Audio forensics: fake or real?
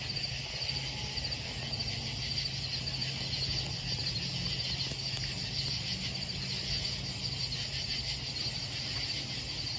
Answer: real